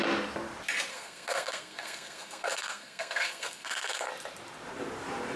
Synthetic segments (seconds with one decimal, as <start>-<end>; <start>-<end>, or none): 0.9-4.1